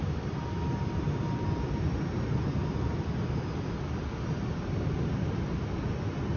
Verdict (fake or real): real